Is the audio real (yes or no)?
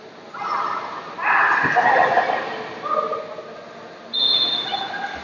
yes